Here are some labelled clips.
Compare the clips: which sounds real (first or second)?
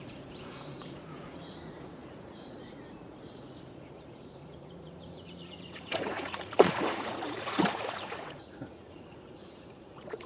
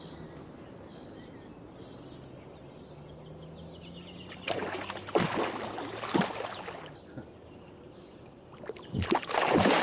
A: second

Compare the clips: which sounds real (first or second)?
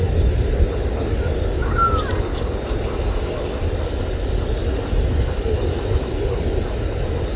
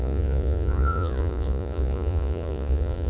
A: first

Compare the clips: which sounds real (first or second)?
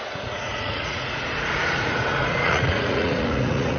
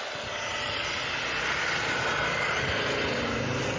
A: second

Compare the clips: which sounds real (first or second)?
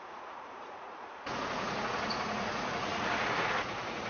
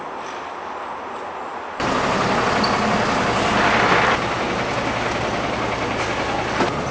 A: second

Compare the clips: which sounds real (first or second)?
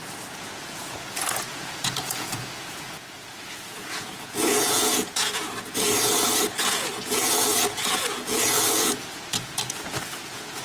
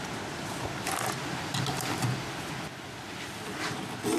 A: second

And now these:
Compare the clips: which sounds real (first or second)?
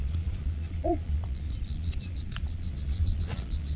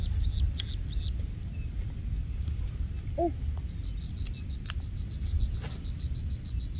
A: second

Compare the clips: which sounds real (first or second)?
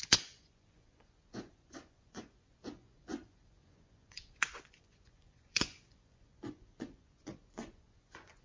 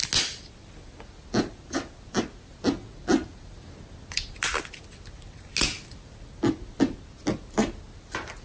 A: second